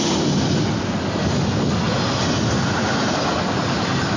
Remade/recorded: recorded